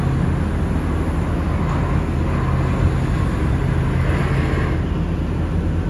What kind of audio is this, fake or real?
real